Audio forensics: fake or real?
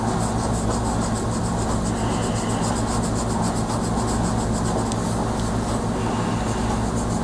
real